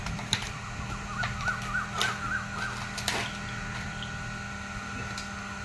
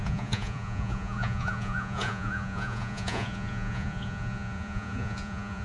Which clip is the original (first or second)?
first